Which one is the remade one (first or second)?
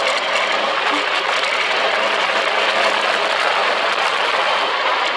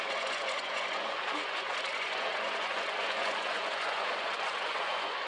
second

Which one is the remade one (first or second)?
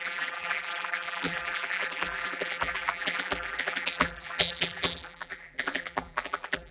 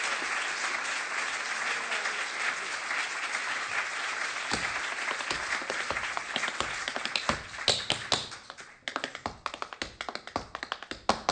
first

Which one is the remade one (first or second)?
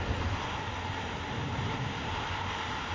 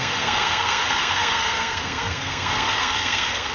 second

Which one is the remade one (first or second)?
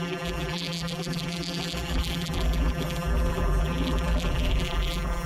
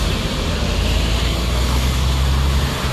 first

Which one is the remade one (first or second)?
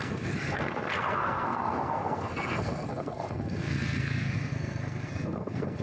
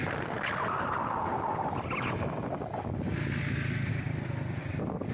first